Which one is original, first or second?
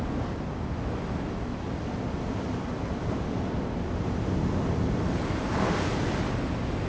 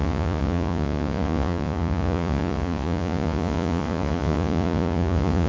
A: first